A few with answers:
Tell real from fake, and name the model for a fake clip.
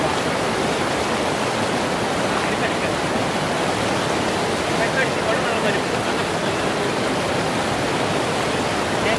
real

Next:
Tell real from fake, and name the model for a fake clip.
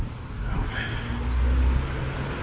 real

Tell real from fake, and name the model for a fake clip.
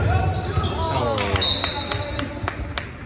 real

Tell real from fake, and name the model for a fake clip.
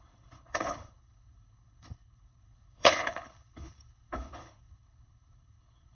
fake, codec, HILCodec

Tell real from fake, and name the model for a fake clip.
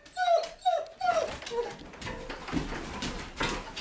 real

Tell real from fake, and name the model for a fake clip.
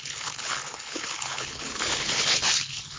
fake, codec, HILCodec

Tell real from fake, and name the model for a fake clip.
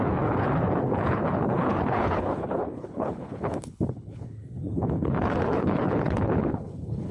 fake, codec, HILCodec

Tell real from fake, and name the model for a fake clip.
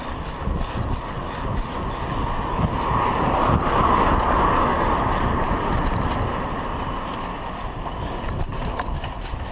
real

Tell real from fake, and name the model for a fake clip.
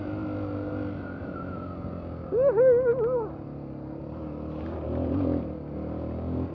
real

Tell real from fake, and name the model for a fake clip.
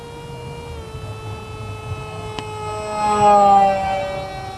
real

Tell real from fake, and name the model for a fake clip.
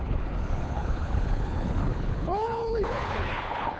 fake, codec, HILCodec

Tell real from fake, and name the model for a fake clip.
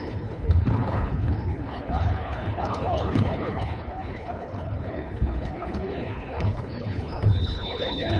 fake, codec, HILCodec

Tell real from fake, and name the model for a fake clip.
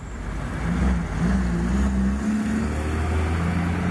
real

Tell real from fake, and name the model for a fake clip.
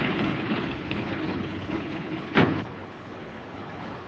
fake, codec, HILCodec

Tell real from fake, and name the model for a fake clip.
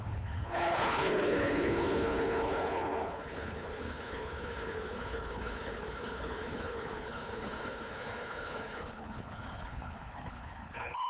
fake, codec, HILCodec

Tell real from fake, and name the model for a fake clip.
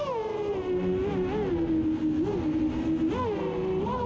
real